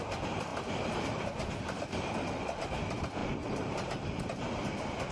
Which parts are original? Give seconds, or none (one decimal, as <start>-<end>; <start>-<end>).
0.0-3.2; 4.2-5.1